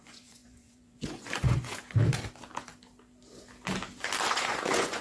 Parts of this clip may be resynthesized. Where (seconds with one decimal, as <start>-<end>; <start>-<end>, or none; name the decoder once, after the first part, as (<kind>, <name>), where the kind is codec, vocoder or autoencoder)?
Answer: 0.0-1.8 (vocoder, Vocos); 4.3-5.0